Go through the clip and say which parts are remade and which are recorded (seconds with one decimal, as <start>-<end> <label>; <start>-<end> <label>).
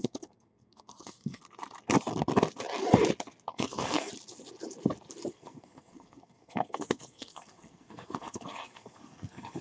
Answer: 0.0-1.4 remade; 1.4-3.5 recorded; 3.5-4.1 remade; 4.1-5.3 recorded; 5.3-9.6 remade